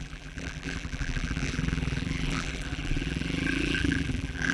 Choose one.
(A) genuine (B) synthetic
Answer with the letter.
B